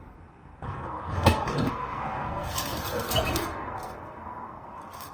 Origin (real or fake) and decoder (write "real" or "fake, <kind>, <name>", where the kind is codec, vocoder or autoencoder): fake, codec, SNAC